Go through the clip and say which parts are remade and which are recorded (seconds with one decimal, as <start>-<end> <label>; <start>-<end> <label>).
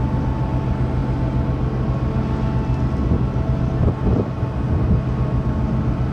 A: 0.0-6.1 recorded